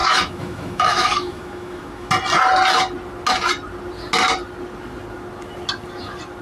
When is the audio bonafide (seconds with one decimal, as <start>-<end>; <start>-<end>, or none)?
2.1-6.4